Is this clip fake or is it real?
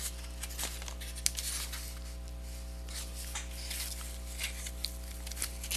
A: real